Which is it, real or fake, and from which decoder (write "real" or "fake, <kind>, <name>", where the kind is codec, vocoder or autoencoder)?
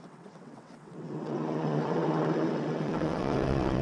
fake, vocoder, WaveNeXt